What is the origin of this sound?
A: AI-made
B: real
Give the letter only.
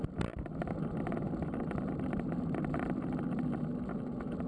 B